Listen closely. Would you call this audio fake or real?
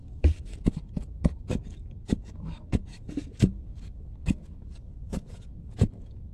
fake